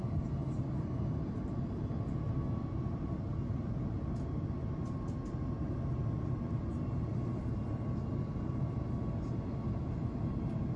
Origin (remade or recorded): recorded